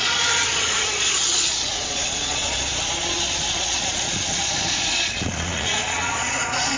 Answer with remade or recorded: remade